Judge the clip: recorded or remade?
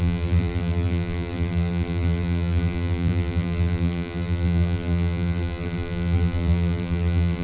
remade